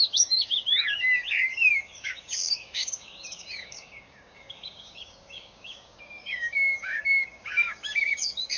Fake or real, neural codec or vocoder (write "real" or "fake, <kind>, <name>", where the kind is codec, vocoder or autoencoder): fake, codec, DAC